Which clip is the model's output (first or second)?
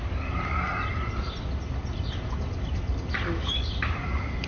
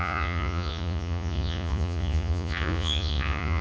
second